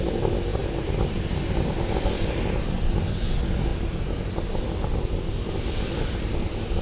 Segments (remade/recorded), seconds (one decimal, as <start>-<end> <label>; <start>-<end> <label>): 0.0-6.8 recorded